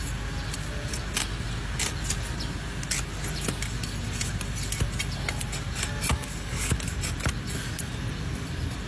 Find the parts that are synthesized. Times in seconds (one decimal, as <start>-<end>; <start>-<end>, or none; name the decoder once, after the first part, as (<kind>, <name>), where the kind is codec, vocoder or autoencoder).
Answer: 6.1-6.7 (codec, DAC)